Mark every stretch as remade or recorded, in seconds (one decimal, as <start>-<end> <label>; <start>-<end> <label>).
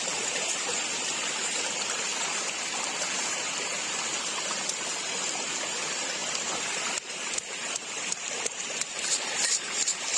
0.0-2.1 remade; 2.1-3.8 recorded; 3.8-4.3 remade; 4.3-4.9 recorded; 4.9-10.2 remade